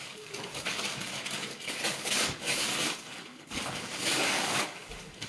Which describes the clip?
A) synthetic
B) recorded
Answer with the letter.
A